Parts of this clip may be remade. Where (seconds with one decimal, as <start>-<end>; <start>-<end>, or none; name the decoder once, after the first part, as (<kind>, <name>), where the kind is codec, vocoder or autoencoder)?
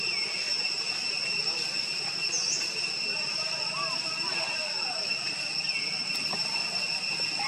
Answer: none